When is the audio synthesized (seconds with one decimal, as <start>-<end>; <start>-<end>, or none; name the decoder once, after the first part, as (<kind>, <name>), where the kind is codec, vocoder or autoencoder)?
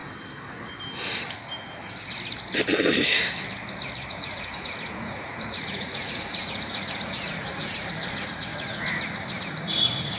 4.1-8.5 (vocoder, Vocos); 9.4-10.2